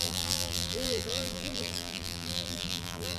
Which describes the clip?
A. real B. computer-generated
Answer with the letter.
B